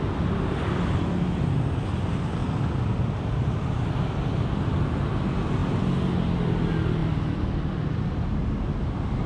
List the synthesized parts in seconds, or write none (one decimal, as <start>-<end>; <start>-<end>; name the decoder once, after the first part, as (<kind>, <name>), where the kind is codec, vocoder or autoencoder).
none